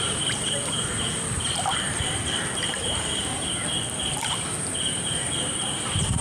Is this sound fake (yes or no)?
yes